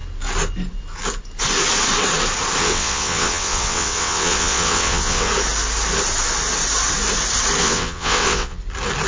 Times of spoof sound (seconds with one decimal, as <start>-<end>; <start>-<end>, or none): 2.6-5.3; 7.6-8.6